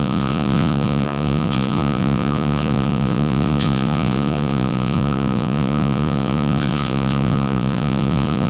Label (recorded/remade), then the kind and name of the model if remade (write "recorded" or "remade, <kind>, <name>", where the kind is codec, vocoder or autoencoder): remade, vocoder, Vocos